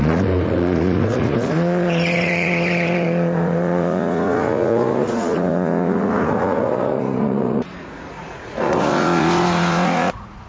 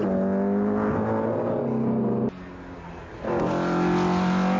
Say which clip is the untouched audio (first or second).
second